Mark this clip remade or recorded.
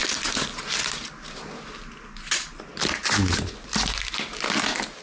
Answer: recorded